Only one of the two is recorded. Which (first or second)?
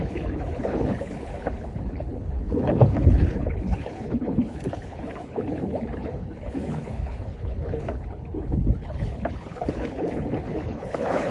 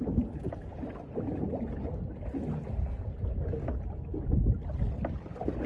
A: second